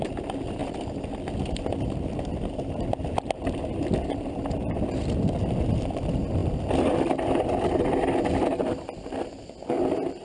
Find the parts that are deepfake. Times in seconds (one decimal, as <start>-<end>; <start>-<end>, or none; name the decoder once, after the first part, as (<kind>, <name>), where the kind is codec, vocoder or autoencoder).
none